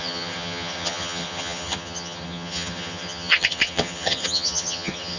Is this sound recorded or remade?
remade